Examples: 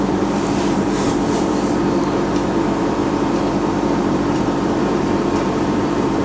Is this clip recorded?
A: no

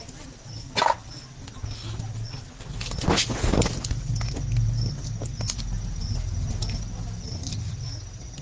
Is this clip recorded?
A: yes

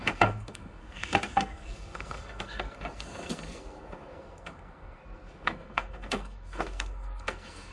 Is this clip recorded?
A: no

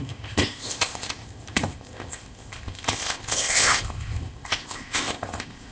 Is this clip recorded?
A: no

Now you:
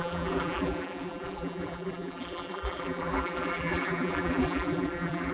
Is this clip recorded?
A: no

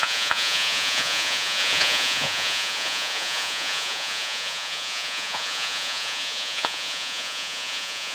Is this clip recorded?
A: no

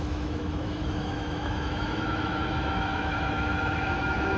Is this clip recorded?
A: no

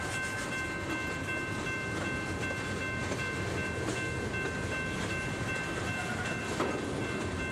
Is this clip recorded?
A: yes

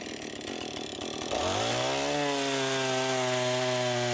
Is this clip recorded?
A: yes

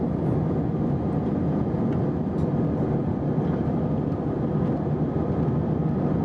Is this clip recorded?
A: yes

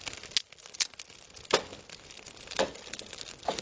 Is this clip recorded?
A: yes